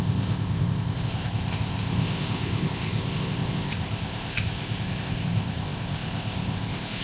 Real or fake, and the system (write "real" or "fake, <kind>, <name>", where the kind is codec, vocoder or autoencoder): fake, codec, ZipCodec